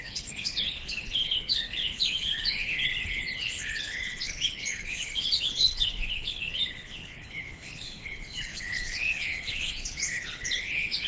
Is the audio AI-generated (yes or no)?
yes